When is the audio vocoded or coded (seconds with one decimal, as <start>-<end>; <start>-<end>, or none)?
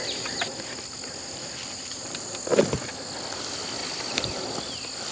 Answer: 1.2-2.4